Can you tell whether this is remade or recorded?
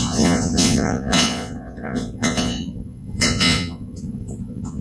remade